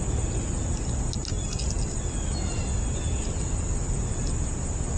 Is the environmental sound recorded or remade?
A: recorded